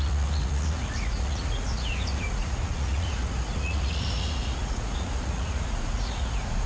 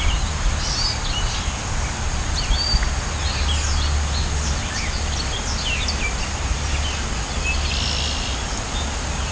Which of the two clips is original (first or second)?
second